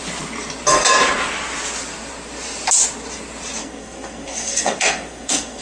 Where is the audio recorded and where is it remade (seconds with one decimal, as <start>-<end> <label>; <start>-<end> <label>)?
0.0-3.6 recorded; 3.6-5.6 remade